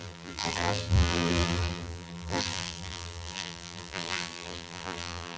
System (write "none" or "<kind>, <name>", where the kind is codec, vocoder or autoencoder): vocoder, BigVGAN v2